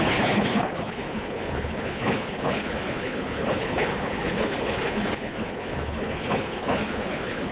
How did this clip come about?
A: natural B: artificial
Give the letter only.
B